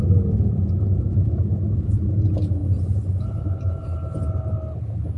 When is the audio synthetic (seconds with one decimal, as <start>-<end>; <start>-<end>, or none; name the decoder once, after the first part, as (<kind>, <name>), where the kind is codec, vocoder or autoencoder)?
none